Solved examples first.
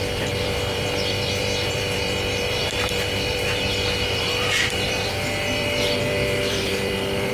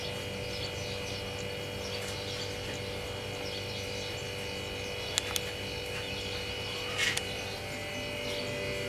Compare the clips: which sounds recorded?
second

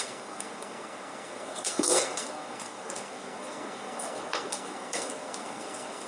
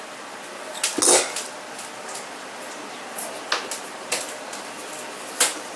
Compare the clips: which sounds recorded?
second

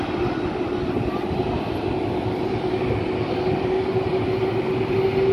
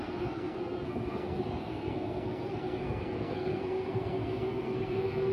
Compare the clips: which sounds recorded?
first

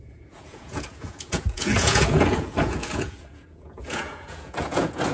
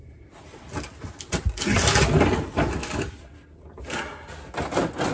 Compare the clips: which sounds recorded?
second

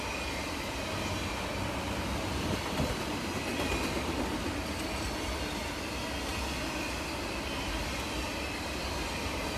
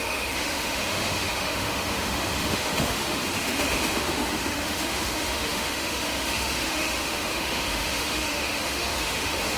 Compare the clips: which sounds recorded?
first